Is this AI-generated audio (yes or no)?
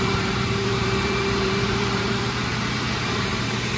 yes